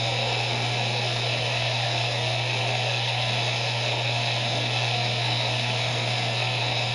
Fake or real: fake